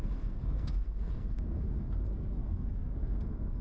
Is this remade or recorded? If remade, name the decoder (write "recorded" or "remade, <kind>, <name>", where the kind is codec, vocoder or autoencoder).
remade, codec, SNAC